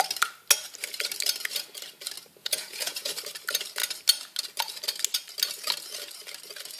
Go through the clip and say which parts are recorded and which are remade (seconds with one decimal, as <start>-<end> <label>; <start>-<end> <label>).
0.0-2.4 recorded; 2.4-3.1 remade; 3.1-6.8 recorded